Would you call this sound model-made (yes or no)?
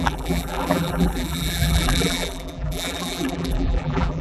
yes